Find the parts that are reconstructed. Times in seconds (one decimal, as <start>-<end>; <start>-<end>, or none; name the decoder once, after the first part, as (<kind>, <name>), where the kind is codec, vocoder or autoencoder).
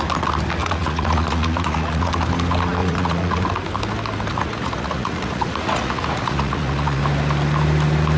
0.6-2.1 (vocoder, Vocos); 2.8-3.4; 4.3-7.0